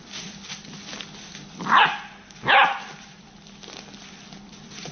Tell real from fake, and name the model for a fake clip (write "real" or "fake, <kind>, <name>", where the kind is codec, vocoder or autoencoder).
real